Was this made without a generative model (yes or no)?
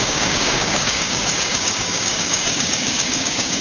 no